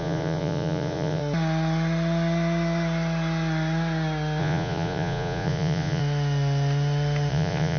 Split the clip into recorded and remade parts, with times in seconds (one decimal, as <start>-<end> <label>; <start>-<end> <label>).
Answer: 0.0-1.2 remade; 1.2-4.4 recorded; 4.4-6.0 remade; 6.0-7.3 recorded; 7.3-7.8 remade